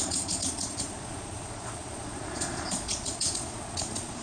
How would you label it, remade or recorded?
remade